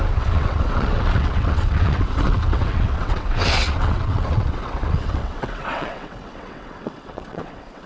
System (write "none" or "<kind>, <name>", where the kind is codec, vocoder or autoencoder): vocoder, WaveNeXt